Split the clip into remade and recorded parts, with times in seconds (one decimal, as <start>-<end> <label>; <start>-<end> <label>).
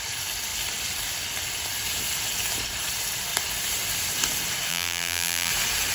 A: 0.0-4.7 recorded; 4.7-5.5 remade; 5.5-5.9 recorded